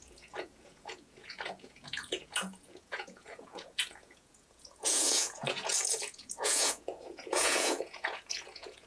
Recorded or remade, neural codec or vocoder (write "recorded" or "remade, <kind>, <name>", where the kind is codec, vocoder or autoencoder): remade, vocoder, Vocos